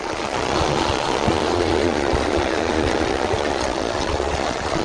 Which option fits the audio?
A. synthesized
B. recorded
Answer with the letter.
A